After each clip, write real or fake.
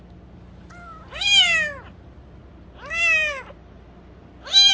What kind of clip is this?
real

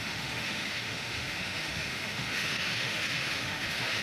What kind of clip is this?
fake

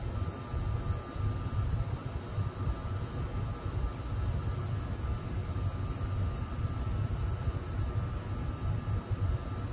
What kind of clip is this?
real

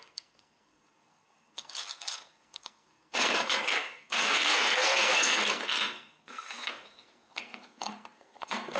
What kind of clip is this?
fake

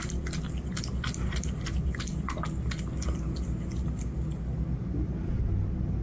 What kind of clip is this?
real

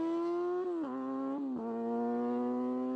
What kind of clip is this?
real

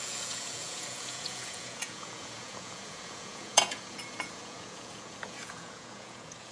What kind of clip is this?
fake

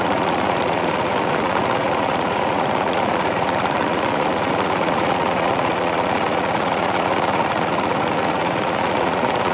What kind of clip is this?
fake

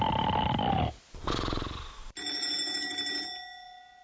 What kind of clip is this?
real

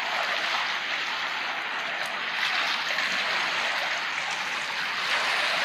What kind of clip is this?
real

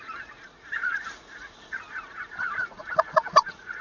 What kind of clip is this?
fake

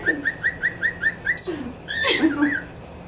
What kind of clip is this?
real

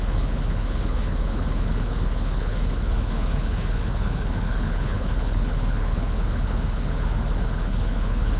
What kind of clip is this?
fake